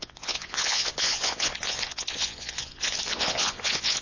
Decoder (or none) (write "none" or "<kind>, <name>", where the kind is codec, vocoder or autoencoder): vocoder, Vocos